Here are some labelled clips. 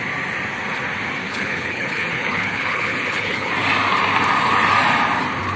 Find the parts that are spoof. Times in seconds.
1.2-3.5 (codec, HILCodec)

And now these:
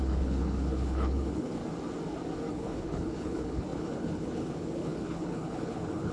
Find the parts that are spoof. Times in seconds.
0.0-1.6 (codec, HILCodec); 2.5-6.1

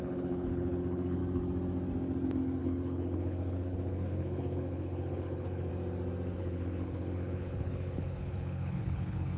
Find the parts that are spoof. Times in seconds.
0.0-1.2 (codec, HILCodec); 2.6-5.7; 6.4-9.4